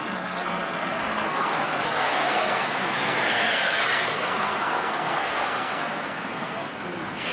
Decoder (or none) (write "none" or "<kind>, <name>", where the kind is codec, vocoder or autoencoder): codec, SNAC